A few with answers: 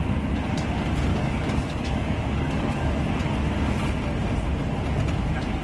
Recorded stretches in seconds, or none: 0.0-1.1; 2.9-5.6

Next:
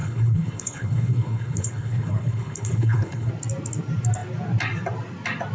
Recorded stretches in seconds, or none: 3.3-5.5